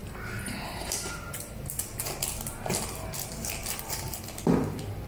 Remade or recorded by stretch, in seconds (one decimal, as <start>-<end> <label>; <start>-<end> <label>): 0.0-5.1 recorded